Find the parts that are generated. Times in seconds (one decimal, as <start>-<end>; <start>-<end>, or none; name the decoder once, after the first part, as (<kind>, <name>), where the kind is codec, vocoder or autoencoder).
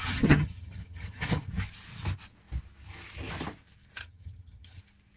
0.0-1.5 (vocoder, HiFi-GAN); 4.0-4.8